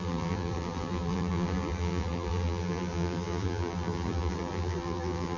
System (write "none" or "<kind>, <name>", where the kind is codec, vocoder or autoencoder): vocoder, BigVGAN v2